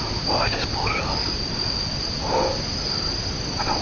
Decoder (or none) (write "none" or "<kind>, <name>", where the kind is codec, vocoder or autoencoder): none